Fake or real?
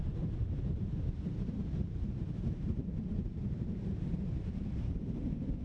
fake